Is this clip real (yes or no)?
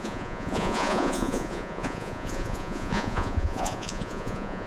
no